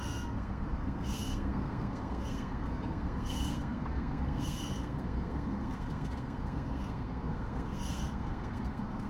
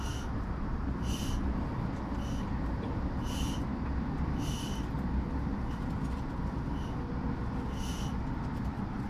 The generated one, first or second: first